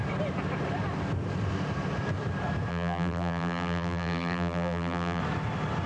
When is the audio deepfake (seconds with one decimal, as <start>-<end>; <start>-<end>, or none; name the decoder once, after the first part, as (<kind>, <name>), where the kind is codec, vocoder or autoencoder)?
2.7-5.2 (vocoder, BigVGAN v2)

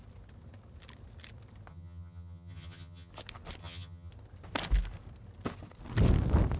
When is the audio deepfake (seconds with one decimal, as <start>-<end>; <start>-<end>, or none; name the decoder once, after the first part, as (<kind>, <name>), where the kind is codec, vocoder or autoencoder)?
1.7-3.1 (vocoder, HiFi-GAN); 3.6-4.1

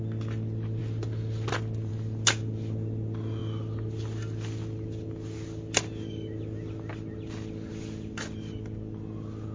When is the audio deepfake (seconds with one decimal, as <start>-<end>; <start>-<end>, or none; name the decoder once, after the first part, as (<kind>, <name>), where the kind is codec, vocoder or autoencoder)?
none

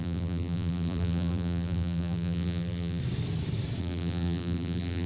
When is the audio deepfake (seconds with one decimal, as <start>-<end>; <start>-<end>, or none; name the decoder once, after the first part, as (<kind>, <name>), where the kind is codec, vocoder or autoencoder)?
0.0-3.0 (vocoder, BigVGAN v2); 3.8-5.1